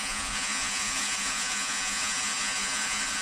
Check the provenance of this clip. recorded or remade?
remade